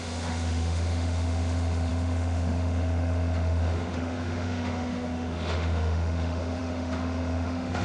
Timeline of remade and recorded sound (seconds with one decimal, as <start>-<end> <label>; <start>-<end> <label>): 0.0-7.8 remade